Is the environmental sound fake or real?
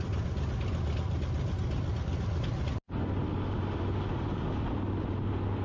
real